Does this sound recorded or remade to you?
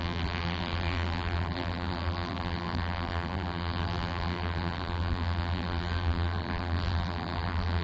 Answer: remade